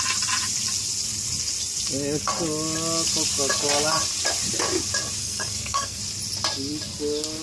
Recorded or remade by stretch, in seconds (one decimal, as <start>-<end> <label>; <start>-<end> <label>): 0.0-5.2 recorded; 5.2-6.0 remade; 6.0-7.4 recorded